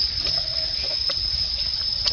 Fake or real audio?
real